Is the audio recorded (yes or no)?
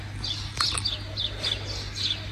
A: yes